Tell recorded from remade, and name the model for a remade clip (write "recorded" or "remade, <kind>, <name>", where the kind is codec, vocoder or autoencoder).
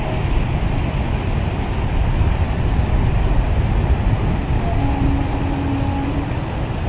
recorded